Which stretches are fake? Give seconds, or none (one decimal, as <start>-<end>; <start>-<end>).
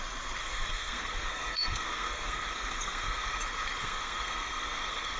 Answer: 0.4-3.4; 3.8-5.2